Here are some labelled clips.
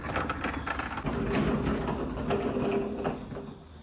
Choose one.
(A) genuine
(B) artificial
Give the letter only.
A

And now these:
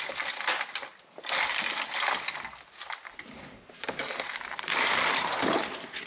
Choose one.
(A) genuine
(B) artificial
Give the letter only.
A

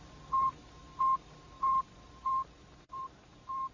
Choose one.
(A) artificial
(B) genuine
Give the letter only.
B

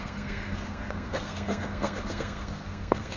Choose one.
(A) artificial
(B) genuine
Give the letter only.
A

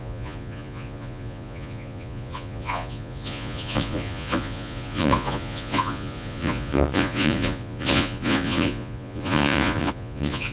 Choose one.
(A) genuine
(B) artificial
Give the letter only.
B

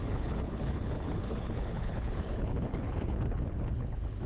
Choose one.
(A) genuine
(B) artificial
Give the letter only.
B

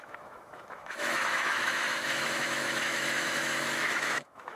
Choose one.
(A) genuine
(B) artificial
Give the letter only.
B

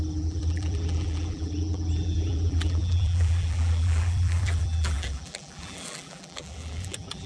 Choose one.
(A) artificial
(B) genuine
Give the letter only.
A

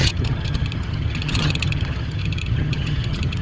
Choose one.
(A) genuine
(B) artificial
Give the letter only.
B